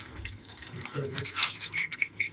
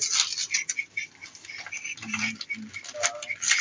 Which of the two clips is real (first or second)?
second